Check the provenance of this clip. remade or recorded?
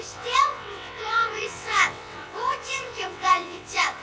remade